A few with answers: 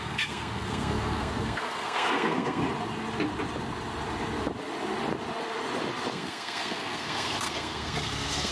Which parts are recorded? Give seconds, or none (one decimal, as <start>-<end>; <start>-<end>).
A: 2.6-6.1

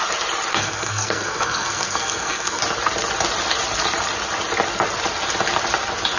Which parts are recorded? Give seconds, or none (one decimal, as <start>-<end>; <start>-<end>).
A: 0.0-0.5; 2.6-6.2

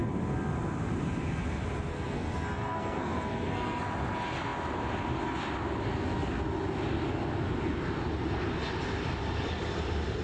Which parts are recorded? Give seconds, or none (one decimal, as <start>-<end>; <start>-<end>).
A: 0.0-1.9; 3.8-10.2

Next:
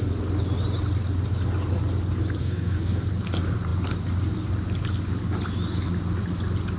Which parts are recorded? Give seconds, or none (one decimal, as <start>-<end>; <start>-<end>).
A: 0.0-2.4; 3.1-6.8

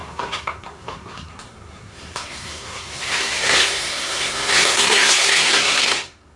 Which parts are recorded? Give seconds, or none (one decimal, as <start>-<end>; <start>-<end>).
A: none

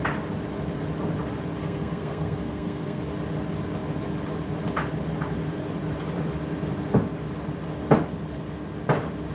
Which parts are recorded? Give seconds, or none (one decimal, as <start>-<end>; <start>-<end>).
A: 0.0-1.6; 3.0-9.3